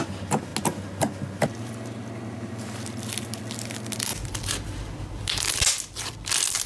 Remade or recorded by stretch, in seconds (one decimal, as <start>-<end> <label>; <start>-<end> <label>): 0.0-6.7 recorded